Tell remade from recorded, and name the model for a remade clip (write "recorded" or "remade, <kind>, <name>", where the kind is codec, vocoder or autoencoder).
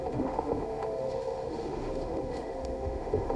remade, autoencoder, DAC-VAE